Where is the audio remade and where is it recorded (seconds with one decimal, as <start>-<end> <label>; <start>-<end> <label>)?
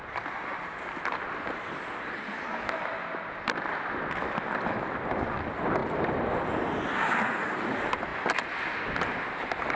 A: 0.0-9.8 recorded